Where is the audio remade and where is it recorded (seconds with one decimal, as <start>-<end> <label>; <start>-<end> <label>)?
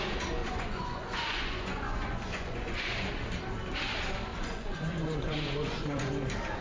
0.0-0.4 recorded; 0.4-3.1 remade; 3.1-4.3 recorded; 4.3-6.1 remade; 6.1-6.6 recorded